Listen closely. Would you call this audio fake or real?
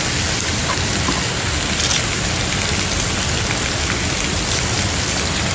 real